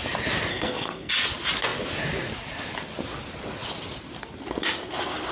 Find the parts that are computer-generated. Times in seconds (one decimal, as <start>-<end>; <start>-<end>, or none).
0.5-1.1

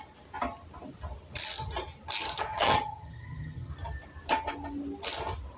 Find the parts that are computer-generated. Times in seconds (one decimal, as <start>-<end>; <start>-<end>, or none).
2.5-3.7